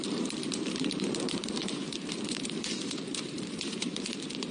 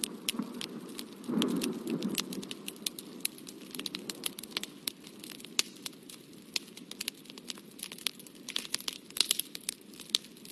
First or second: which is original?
second